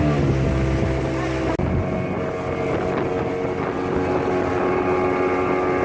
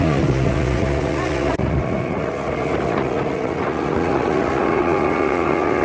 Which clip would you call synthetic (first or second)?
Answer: second